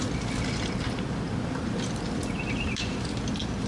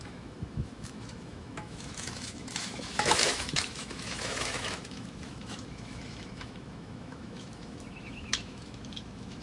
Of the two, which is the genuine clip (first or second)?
first